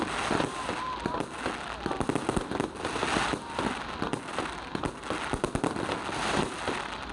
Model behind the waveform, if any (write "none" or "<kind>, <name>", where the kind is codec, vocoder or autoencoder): none